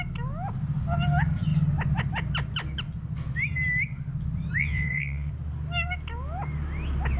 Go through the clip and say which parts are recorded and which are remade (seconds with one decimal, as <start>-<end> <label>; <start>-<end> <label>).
0.0-4.6 recorded; 4.6-5.3 remade; 5.3-7.2 recorded